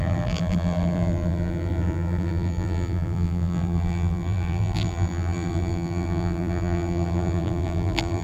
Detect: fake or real fake